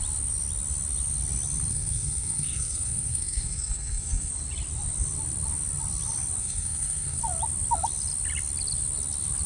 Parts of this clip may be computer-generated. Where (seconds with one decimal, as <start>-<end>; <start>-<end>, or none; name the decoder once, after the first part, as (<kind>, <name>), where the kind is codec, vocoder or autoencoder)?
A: 1.7-4.3 (codec, SNAC); 6.4-7.2